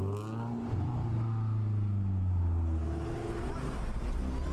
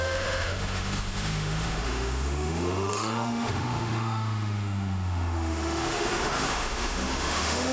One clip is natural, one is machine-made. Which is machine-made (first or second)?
second